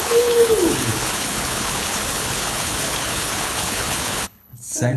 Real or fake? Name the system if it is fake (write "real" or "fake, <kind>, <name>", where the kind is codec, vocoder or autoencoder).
fake, codec, HILCodec